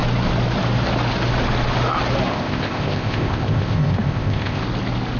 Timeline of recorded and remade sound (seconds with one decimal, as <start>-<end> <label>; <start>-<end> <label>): 0.0-2.3 recorded; 2.3-4.6 remade; 4.6-5.2 recorded